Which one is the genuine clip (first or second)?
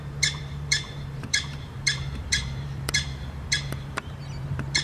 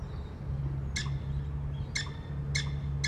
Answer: second